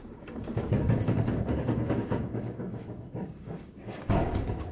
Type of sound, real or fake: fake